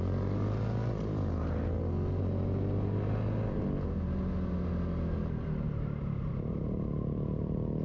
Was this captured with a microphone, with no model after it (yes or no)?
yes